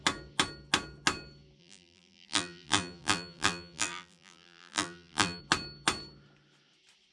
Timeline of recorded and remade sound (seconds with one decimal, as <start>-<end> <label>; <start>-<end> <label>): 0.0-1.6 recorded; 1.6-5.4 remade; 5.4-7.1 recorded